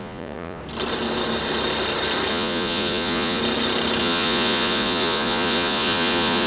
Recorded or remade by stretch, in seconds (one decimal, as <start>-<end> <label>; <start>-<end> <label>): 0.0-0.6 remade; 0.6-2.3 recorded; 2.3-3.4 remade; 3.4-4.0 recorded; 4.0-6.5 remade